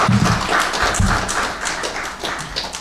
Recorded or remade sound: recorded